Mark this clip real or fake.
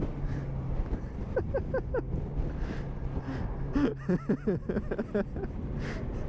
real